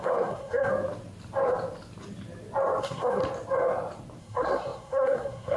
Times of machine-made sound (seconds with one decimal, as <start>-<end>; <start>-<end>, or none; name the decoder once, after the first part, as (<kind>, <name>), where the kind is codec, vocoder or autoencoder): 0.0-0.7 (codec, SNAC); 2.8-3.2; 4.2-5.6